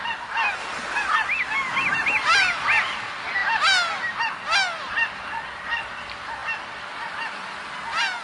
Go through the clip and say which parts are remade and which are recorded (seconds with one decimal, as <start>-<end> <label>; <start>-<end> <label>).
0.0-8.2 recorded